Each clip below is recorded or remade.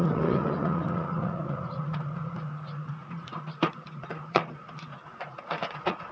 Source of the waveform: remade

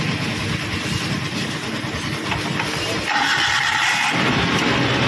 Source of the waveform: recorded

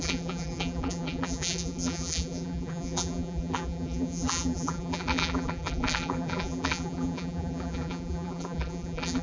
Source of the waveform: remade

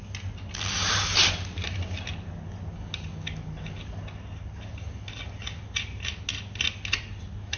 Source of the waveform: recorded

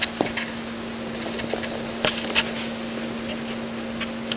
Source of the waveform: recorded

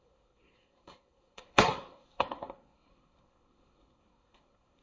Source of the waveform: remade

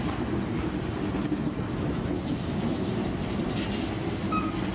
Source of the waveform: recorded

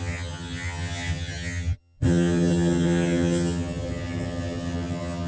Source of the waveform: remade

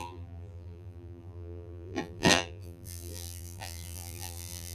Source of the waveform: remade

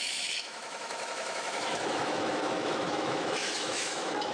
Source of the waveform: remade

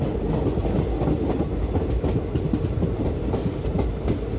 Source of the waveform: recorded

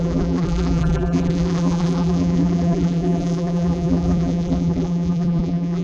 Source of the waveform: remade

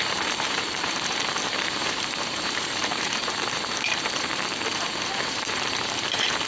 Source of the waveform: remade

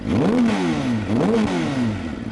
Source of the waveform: recorded